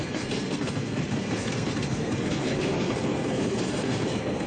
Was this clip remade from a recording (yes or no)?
yes